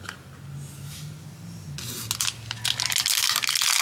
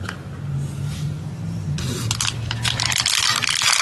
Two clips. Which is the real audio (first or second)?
first